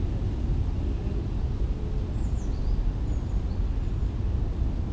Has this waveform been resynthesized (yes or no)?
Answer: no